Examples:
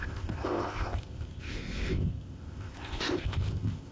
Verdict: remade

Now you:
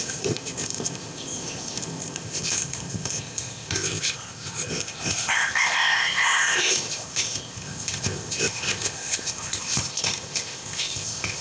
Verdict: remade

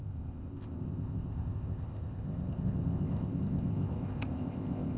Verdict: remade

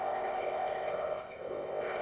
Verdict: remade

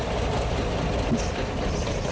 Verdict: recorded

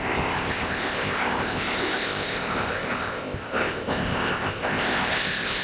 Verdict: remade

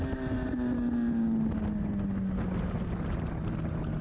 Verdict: recorded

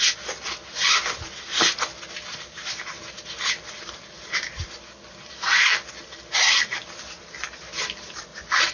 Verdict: recorded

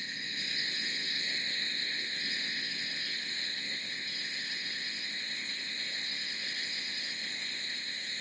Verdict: remade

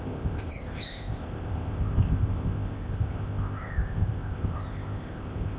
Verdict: remade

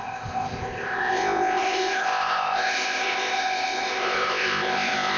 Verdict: remade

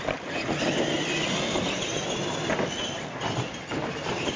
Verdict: recorded